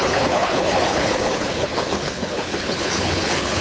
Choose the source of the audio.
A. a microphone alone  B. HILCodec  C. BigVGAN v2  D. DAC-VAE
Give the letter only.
B